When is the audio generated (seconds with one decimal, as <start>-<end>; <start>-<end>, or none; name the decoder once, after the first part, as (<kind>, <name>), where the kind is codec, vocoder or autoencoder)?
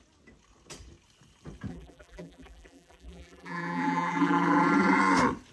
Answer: 1.7-5.0 (vocoder, BigVGAN v2)